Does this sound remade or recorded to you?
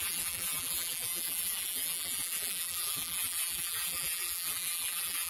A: remade